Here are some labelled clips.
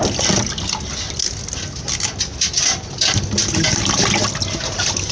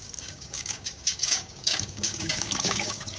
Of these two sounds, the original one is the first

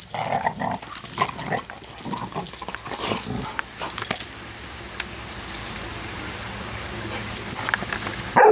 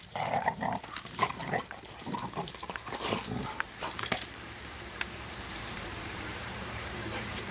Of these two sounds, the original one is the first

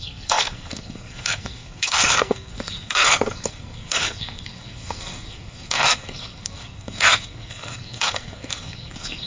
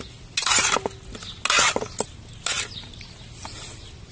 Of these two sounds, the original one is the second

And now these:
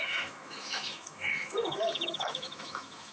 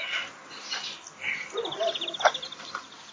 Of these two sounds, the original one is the second